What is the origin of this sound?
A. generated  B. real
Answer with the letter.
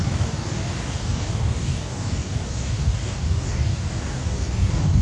A